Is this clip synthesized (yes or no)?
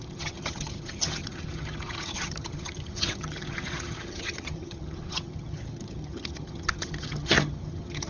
yes